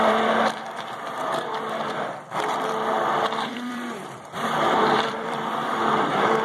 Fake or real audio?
fake